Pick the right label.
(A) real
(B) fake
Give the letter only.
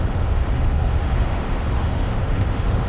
B